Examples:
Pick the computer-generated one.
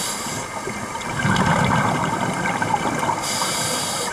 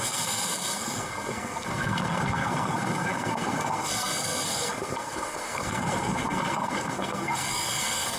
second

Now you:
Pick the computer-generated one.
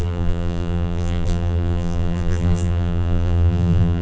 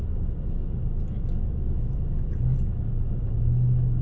first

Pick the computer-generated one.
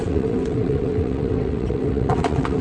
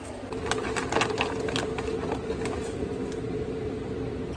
first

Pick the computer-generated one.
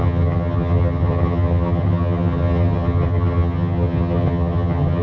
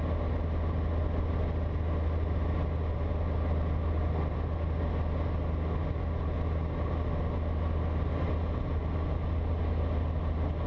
first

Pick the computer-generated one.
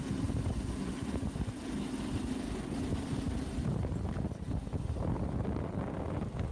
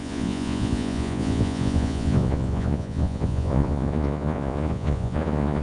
second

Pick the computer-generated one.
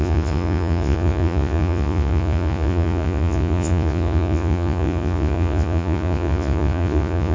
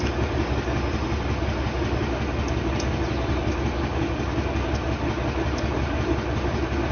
first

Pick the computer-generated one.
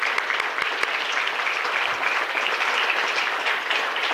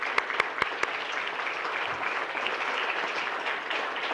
first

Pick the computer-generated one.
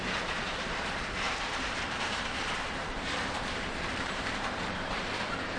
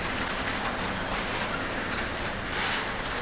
first